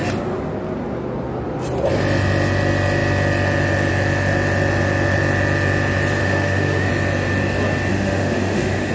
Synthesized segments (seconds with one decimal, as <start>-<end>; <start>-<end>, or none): 6.2-6.9; 7.9-8.9